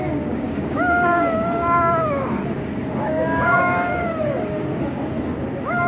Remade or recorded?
remade